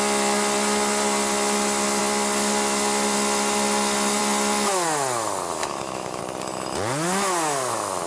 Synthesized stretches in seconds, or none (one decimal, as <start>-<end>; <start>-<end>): 5.5-6.2